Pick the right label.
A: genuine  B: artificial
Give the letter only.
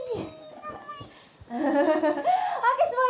A